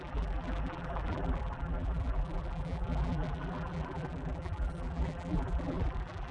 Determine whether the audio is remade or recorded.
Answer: remade